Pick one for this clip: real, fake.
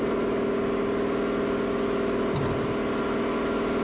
real